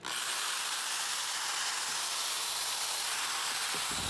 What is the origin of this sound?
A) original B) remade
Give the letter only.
A